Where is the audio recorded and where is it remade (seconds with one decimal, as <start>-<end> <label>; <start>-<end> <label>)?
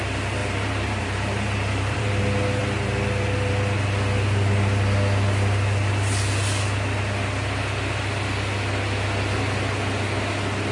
0.0-0.4 recorded; 0.4-2.2 remade; 2.2-10.7 recorded